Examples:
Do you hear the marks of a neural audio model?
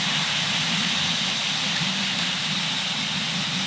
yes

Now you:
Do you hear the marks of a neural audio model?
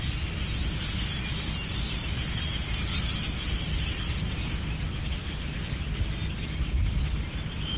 no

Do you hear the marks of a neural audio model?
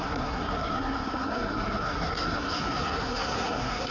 yes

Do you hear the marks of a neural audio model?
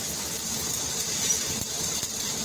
yes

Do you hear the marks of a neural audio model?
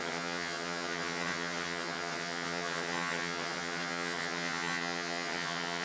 yes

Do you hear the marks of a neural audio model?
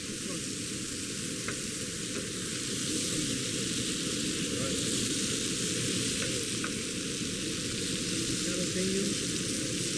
no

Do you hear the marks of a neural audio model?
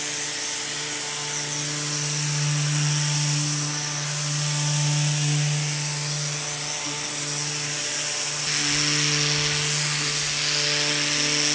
no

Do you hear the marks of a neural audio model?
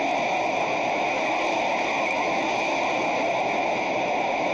no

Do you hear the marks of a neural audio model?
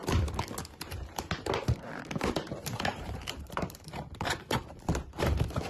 yes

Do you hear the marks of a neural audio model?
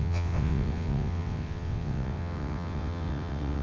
yes